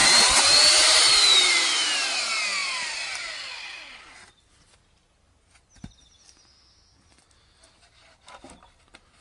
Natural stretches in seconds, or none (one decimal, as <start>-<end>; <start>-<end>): 2.2-9.2